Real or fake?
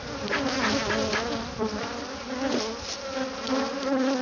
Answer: real